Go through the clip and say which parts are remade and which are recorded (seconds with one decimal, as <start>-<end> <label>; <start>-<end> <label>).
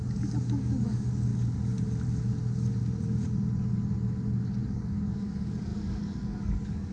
0.0-1.3 remade; 1.3-4.6 recorded; 4.6-6.9 remade